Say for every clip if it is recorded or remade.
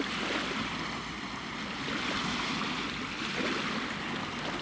recorded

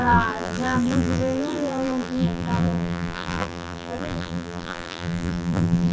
remade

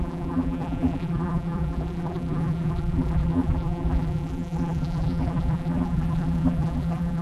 remade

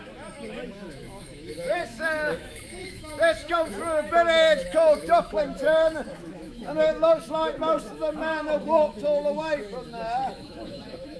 remade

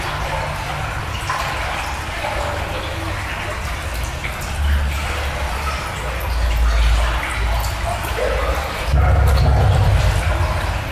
recorded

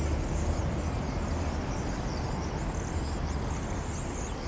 recorded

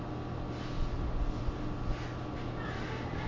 recorded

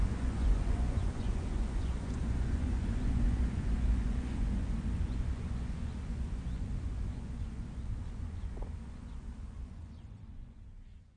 remade